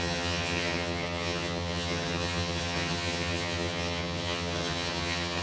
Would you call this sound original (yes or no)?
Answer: no